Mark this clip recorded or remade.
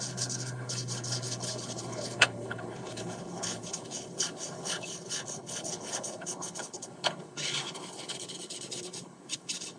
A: remade